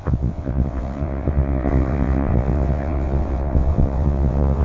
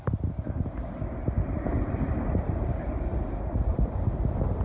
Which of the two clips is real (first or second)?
second